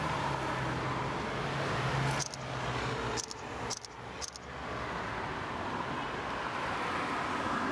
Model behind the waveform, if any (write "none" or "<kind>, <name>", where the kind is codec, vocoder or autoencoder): none